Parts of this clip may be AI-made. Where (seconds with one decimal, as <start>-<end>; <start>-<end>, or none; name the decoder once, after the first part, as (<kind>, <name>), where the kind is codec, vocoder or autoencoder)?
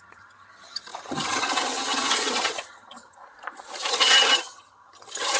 0.0-3.2 (vocoder, HiFi-GAN); 3.9-5.4